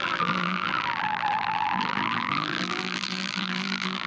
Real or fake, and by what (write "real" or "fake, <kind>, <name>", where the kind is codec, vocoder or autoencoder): fake, vocoder, BigVGAN v2